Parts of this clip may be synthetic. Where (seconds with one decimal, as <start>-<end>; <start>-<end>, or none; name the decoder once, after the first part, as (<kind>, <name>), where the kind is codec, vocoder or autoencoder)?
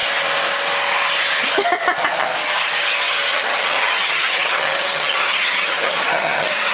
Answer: 3.3-6.7 (vocoder, HiFi-GAN)